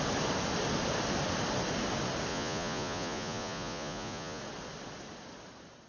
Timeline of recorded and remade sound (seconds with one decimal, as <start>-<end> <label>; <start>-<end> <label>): 0.0-2.3 recorded; 2.3-4.4 remade; 4.4-5.9 recorded